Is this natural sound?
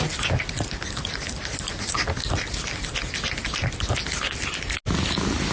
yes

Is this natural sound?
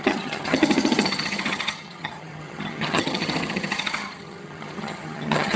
no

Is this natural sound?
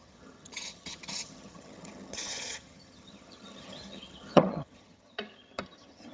no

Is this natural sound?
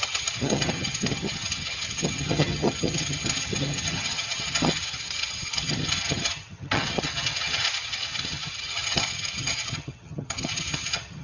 no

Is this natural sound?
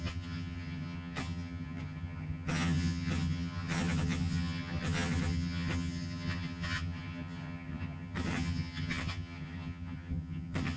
no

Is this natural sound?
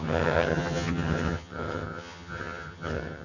no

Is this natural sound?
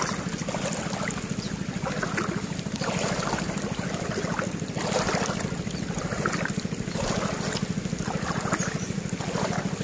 yes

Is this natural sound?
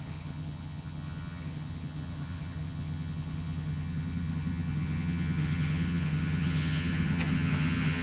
no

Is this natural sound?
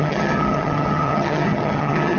no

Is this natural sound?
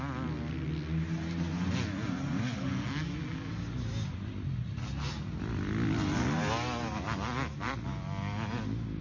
yes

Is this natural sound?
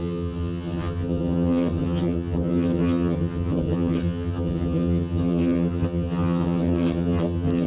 no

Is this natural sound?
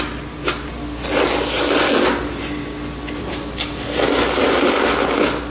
yes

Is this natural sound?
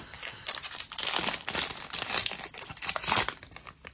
yes